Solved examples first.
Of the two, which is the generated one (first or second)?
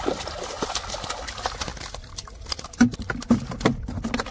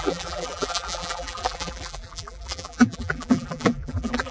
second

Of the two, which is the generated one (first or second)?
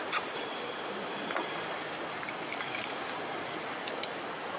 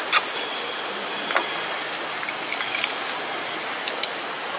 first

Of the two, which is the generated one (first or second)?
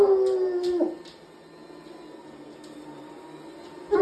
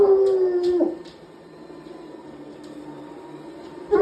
second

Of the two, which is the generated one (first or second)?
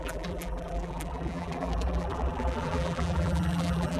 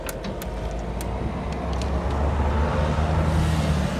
first